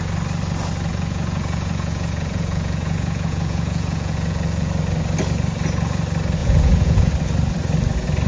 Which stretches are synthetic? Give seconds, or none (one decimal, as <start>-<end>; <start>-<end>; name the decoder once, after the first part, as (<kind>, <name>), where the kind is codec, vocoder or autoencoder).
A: 0.9-4.7 (vocoder, Vocos); 6.4-7.1